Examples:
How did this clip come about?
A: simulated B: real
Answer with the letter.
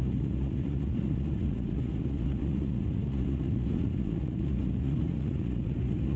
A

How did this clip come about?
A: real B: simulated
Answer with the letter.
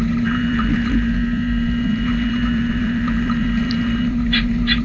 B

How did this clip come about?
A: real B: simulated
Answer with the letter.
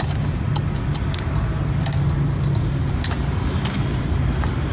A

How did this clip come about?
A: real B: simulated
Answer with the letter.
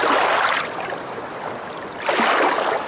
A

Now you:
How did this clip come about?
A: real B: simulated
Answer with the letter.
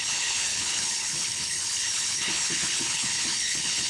B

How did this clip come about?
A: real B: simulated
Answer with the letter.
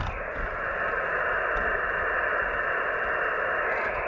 A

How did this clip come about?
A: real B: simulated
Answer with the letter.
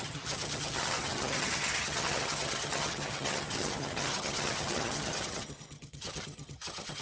B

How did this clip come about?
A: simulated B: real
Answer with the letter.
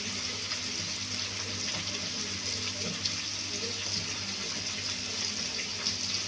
B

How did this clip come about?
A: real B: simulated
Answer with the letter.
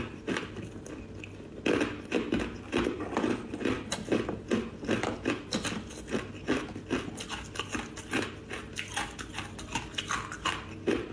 A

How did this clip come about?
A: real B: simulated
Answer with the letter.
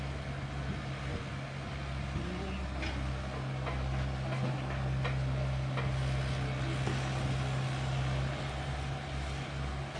A